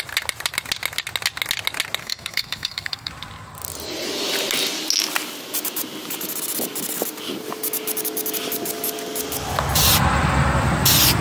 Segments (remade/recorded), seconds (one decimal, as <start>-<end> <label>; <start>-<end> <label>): 0.0-2.0 recorded; 2.0-3.1 remade; 3.1-11.2 recorded